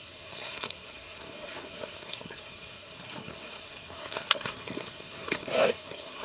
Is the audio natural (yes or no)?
no